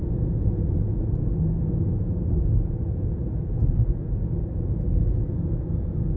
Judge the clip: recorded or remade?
remade